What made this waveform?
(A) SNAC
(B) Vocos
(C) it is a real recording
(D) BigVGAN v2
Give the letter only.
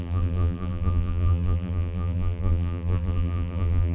D